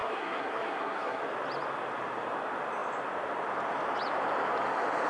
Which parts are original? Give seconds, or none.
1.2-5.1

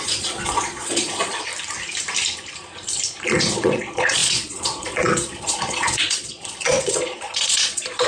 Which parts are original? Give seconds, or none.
1.5-3.4

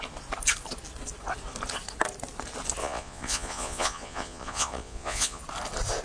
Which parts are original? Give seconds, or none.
0.0-2.8; 5.4-6.0

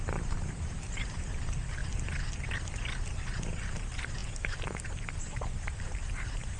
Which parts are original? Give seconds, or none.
1.8-3.6

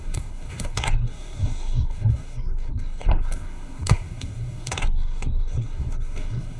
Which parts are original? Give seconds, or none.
none

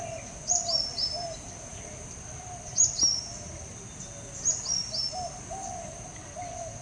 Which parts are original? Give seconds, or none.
0.0-6.8